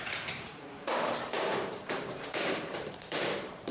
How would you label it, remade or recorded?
remade